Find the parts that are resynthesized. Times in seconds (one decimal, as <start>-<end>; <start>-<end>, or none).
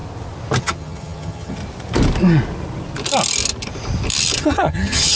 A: 0.6-1.6; 4.4-5.2